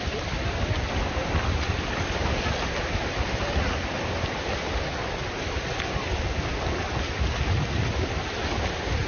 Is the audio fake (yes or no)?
no